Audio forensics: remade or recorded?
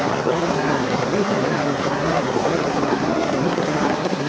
remade